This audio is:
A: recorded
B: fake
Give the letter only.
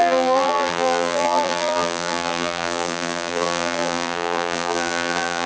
B